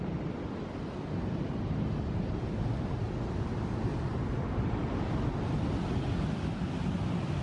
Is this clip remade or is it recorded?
recorded